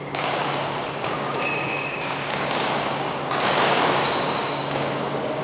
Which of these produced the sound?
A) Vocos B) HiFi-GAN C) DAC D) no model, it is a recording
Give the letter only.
C